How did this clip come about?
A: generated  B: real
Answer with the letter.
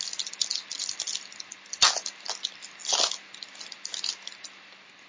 B